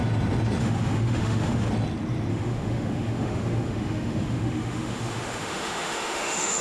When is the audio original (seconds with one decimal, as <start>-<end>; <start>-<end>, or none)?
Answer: 0.0-0.6; 1.7-2.3